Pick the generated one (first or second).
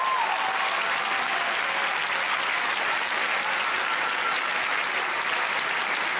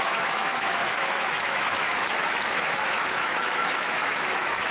second